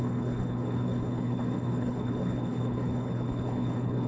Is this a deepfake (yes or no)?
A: yes